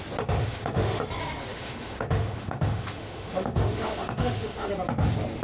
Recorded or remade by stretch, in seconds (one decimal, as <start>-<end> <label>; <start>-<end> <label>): 0.0-0.4 recorded; 0.4-1.0 remade; 1.0-1.5 recorded; 1.5-4.7 remade; 4.7-5.4 recorded